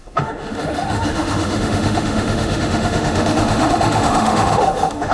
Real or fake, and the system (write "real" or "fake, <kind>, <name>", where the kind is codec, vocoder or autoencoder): fake, autoencoder, DAC-VAE